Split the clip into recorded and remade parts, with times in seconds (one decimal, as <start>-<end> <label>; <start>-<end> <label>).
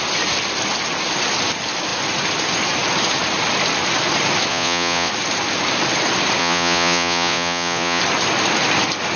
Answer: 0.0-4.5 recorded; 4.5-5.1 remade; 5.1-6.4 recorded; 6.4-8.0 remade; 8.0-9.2 recorded